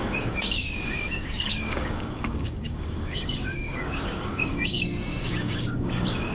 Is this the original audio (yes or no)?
no